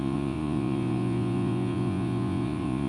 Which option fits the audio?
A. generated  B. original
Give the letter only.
A